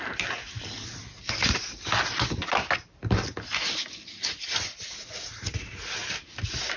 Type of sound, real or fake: real